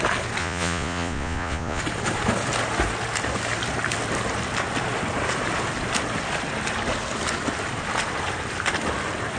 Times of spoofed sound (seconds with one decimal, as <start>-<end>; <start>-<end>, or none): 0.4-1.8